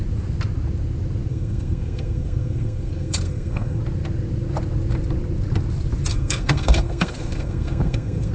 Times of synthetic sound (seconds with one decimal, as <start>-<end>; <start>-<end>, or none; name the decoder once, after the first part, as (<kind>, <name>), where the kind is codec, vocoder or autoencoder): 1.3-3.8 (codec, SNAC); 6.1-8.3

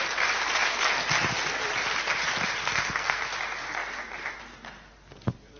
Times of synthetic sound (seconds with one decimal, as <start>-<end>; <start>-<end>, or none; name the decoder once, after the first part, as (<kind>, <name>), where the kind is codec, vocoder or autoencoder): 2.6-3.2 (codec, SNAC)

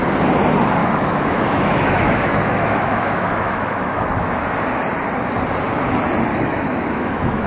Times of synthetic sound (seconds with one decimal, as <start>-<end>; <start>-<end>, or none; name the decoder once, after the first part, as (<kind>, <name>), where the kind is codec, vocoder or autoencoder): 0.8-4.1 (autoencoder, DAC-VAE); 6.3-7.5

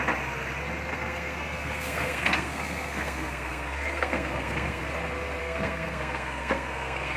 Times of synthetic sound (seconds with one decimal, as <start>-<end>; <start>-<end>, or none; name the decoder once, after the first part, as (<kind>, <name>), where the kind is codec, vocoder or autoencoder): 0.9-4.8 (codec, SNAC); 5.4-7.2

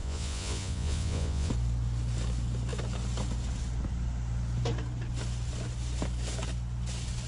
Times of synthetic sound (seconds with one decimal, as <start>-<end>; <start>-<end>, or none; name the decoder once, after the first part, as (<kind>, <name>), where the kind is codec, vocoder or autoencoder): 0.0-1.5 (vocoder, Vocos)